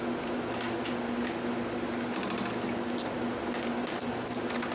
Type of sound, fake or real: real